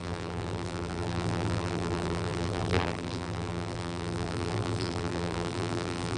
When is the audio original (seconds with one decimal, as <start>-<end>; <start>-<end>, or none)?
none